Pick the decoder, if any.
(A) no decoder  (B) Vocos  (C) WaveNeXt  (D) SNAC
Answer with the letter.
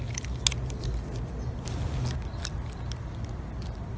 A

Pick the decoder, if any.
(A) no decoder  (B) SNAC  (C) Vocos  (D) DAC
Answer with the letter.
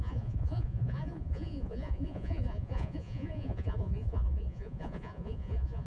C